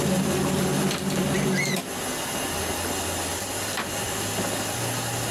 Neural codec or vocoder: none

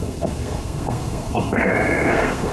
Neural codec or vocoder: codec, SNAC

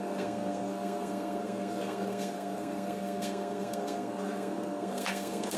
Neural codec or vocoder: codec, SNAC